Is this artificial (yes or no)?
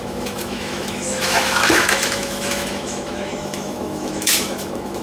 yes